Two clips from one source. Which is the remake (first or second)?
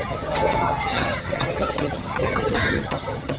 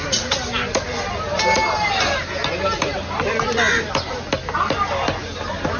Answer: first